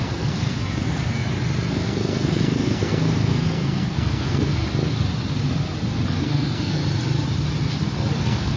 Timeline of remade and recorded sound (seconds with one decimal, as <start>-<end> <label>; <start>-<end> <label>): 0.0-1.2 remade; 1.2-1.7 recorded; 1.7-4.6 remade; 4.6-6.2 recorded; 6.2-6.8 remade; 6.8-8.2 recorded; 8.2-8.6 remade